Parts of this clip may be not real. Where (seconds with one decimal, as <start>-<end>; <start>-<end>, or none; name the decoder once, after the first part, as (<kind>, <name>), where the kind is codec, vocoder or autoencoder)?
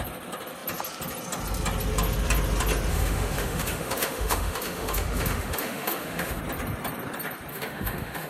2.9-6.4 (autoencoder, DAC-VAE); 7.5-8.3